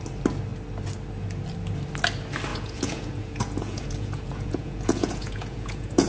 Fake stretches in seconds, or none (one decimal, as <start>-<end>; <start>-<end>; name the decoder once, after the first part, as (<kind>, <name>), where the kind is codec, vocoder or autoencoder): 2.5-6.1 (vocoder, Vocos)

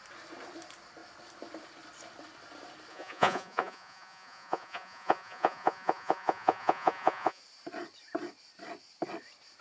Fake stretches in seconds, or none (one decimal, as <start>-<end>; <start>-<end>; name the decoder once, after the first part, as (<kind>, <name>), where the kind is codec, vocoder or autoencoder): 2.9-7.4 (vocoder, Vocos)